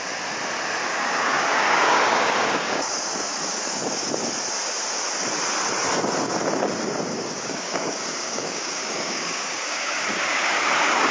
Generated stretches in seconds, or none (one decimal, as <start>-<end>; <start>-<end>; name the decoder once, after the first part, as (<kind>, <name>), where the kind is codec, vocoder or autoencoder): 0.9-4.1 (codec, DAC); 7.1-11.1